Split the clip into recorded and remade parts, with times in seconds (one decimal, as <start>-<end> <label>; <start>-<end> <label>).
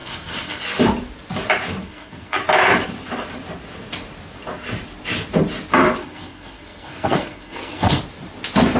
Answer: 0.0-0.6 remade; 0.6-1.8 recorded; 1.8-2.4 remade; 2.4-6.0 recorded; 6.0-8.0 remade; 8.0-8.8 recorded